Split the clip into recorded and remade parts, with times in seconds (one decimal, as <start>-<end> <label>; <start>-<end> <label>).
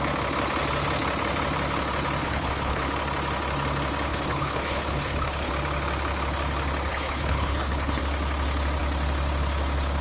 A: 0.0-2.2 recorded; 2.2-2.8 remade; 2.8-4.1 recorded; 4.1-5.5 remade; 5.5-6.9 recorded; 6.9-8.0 remade; 8.0-10.0 recorded